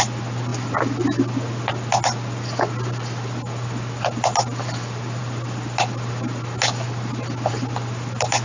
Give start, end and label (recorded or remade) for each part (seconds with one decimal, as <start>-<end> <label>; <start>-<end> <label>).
0.0-8.4 recorded